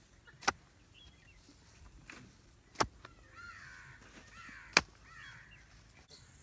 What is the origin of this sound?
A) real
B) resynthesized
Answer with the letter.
A